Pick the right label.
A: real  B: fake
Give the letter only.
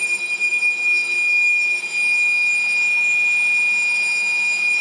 A